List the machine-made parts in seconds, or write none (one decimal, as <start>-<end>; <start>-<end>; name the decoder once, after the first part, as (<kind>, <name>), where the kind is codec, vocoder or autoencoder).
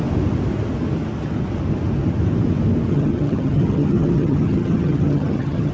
2.9-5.7 (vocoder, HiFi-GAN)